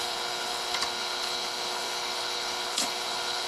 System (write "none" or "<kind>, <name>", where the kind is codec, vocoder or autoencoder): codec, HILCodec